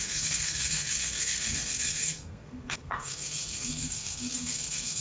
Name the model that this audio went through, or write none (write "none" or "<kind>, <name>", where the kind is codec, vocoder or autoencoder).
codec, SNAC